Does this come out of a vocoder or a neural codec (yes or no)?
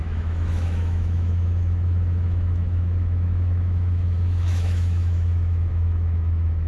yes